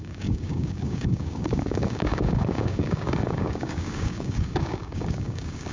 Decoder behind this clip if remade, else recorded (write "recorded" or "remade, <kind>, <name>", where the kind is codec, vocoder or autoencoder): remade, codec, DAC